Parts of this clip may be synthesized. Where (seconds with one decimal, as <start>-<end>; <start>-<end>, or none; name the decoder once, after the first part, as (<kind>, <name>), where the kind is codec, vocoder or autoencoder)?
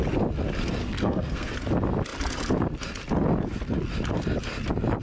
0.8-1.5 (codec, SNAC)